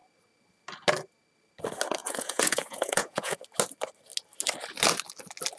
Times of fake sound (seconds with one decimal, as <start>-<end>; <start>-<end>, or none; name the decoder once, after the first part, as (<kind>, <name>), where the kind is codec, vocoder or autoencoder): 2.0-3.4 (vocoder, Vocos)